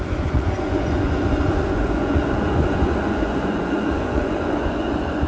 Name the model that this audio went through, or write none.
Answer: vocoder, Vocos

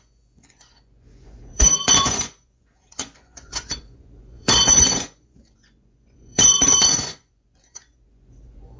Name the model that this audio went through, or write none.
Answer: vocoder, Vocos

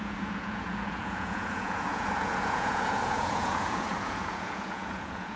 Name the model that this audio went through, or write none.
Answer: vocoder, Vocos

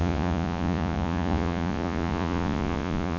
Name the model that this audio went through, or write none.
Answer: vocoder, Vocos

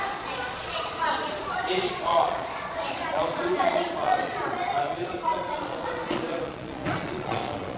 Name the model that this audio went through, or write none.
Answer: vocoder, Vocos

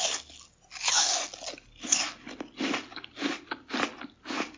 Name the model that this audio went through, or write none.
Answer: none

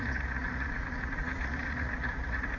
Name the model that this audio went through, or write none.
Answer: vocoder, Vocos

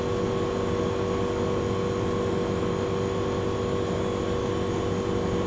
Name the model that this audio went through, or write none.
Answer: none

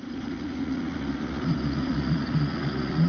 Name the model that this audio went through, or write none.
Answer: vocoder, Vocos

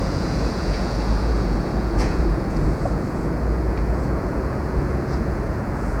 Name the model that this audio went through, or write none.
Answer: vocoder, Vocos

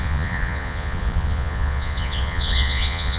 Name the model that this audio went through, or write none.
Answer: vocoder, Vocos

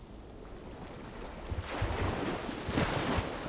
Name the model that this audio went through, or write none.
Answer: none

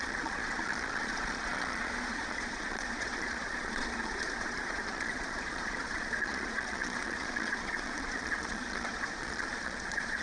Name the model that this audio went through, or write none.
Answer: vocoder, Vocos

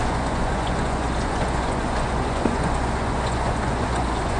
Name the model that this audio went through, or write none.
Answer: vocoder, Vocos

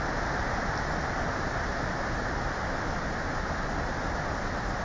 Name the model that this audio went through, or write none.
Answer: none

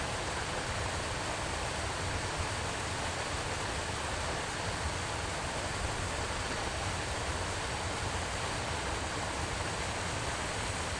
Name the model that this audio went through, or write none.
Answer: none